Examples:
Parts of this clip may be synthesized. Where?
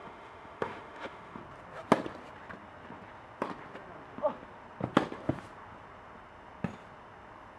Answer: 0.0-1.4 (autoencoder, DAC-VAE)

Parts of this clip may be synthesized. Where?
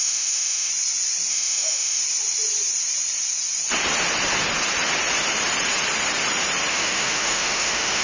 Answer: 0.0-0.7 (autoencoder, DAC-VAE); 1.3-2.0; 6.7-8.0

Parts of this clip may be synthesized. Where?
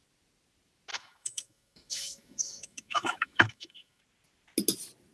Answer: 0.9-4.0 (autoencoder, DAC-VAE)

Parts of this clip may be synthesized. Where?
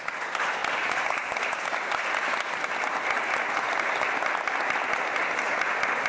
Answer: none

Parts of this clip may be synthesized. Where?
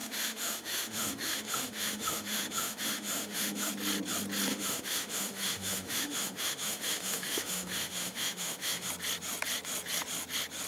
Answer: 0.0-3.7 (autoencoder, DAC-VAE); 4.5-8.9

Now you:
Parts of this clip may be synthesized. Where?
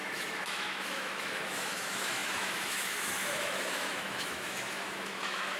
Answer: 0.0-5.6 (autoencoder, DAC-VAE)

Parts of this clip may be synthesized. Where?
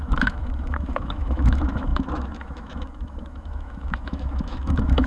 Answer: 0.0-5.1 (autoencoder, DAC-VAE)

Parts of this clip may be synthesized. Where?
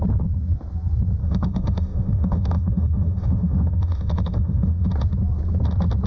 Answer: 1.2-4.9 (autoencoder, DAC-VAE)